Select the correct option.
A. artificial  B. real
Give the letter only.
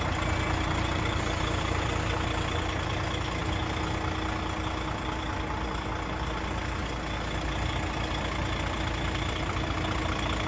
B